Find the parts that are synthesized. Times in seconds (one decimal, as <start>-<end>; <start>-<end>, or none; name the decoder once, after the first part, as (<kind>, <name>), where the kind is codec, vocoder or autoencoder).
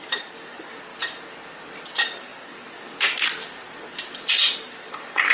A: 0.0-0.9 (vocoder, BigVGAN v2); 1.9-2.3; 4.3-5.3